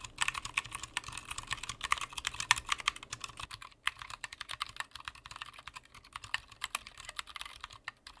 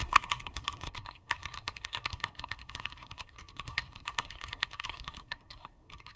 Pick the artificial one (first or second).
second